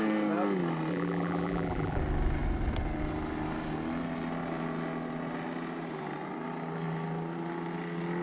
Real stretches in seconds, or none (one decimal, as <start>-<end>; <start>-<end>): 0.0-0.9; 2.0-8.2